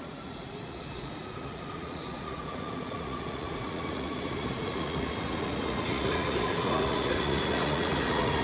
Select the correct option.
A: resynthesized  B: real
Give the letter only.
A